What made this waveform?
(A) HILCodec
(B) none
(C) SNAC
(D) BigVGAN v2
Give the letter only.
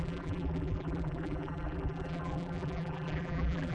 D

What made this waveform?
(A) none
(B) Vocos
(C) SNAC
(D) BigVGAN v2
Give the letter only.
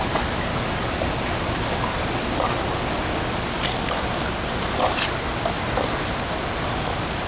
A